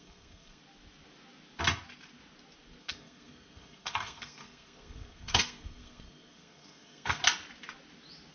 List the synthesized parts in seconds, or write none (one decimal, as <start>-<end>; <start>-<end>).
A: 0.0-0.6; 2.8-7.2